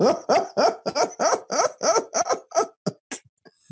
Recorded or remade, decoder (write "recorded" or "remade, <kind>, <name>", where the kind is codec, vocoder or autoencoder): recorded